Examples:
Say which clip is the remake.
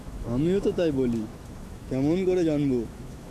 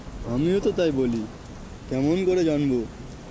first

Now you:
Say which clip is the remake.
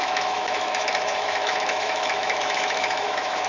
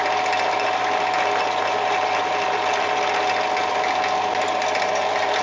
first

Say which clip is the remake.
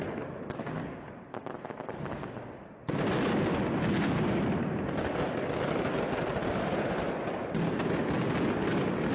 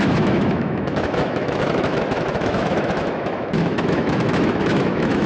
second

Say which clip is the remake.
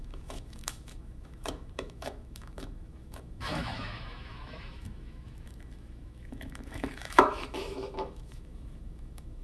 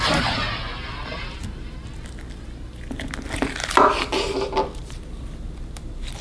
first